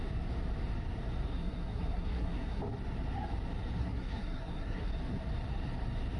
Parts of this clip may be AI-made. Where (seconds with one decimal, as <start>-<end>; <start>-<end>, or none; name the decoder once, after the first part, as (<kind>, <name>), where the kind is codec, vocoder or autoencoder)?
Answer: 1.3-2.6 (codec, SNAC); 3.8-4.9